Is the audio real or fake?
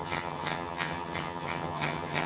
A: fake